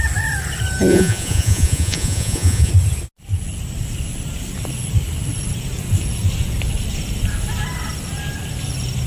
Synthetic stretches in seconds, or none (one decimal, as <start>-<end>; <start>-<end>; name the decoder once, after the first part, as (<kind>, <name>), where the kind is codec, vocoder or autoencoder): 0.9-2.7 (vocoder, Vocos)